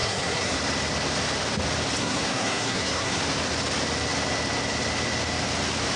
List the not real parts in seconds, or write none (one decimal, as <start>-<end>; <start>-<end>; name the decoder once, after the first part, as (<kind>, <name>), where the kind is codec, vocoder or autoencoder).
0.0-0.6 (codec, SNAC); 2.0-3.2